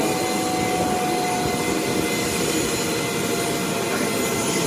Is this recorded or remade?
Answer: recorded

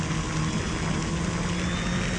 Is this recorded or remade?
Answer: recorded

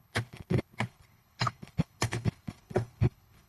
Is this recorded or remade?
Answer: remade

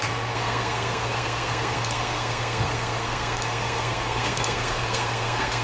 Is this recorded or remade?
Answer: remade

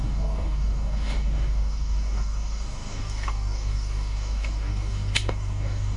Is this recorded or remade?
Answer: remade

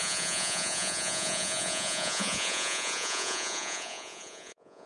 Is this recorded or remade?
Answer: remade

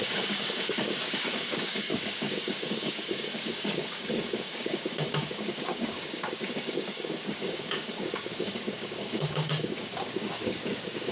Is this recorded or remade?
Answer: remade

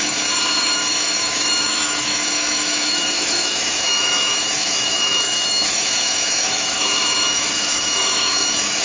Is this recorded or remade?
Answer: remade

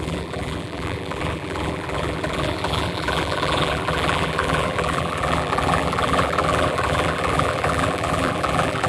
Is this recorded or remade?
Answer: remade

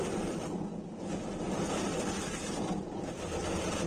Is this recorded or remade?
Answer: remade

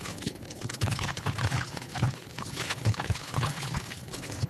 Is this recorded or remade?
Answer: remade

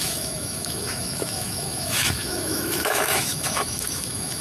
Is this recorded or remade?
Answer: remade